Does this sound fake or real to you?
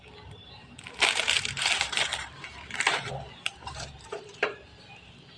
fake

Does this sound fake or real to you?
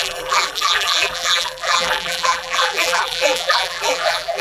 fake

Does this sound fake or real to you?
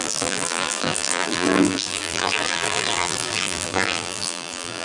fake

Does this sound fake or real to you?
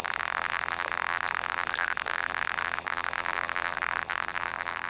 fake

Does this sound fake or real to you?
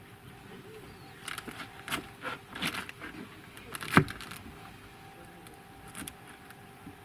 real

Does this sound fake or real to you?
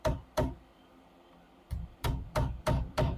fake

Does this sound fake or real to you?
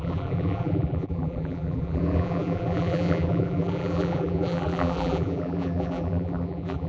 fake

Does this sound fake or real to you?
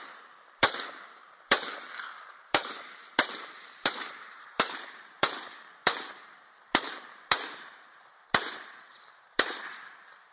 fake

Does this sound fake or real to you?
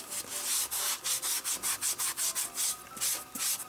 real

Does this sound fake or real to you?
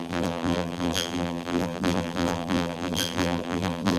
fake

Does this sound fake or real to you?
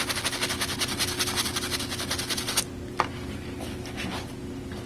real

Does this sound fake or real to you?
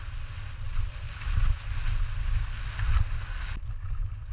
real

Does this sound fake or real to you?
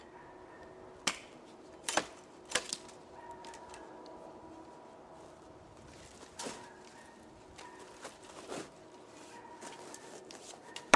real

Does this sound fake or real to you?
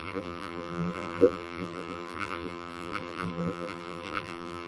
fake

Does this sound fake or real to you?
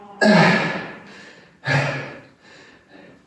real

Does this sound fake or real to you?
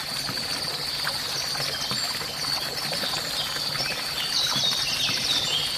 real